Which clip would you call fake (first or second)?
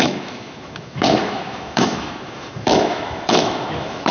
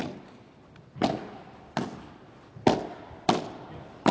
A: first